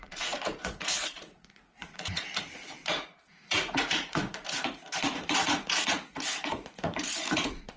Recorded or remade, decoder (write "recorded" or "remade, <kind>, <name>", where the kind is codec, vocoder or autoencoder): remade, vocoder, Vocos